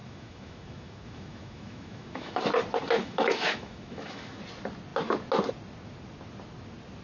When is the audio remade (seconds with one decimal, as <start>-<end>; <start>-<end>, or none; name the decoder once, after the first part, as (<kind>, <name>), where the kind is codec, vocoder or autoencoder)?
0.0-2.4 (autoencoder, DAC-VAE); 3.0-4.4